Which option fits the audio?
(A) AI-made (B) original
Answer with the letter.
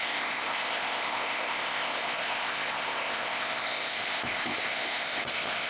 A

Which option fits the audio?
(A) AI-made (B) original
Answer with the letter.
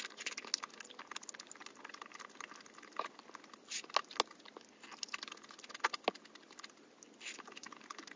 B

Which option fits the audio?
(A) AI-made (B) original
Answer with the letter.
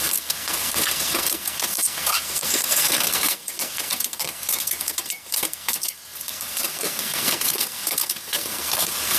A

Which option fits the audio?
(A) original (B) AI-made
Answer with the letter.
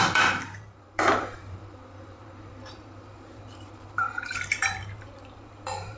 B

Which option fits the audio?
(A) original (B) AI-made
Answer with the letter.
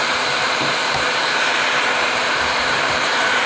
B